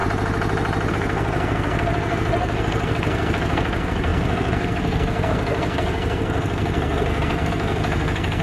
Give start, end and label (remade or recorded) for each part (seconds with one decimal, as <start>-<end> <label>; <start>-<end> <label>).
0.0-0.9 recorded; 0.9-8.4 remade